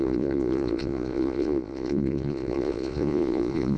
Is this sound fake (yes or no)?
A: yes